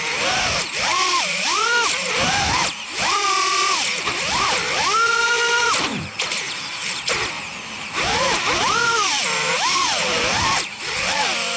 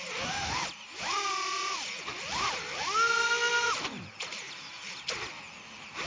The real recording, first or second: second